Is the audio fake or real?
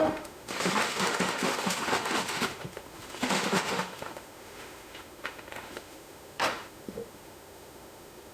fake